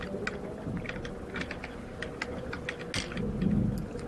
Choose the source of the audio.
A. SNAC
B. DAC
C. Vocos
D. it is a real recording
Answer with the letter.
D